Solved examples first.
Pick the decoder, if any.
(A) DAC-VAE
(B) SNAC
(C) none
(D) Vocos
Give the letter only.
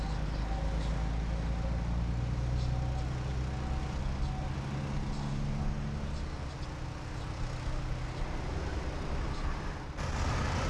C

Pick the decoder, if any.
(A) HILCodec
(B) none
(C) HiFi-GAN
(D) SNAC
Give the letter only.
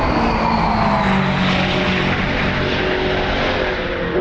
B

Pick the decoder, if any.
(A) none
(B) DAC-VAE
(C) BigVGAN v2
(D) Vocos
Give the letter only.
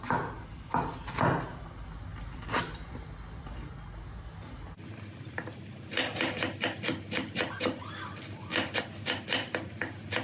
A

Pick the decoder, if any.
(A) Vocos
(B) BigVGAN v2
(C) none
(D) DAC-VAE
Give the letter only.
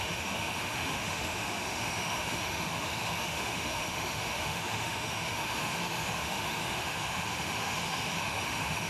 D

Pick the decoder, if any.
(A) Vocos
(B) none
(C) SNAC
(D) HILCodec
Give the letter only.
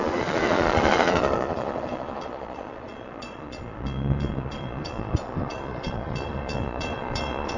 A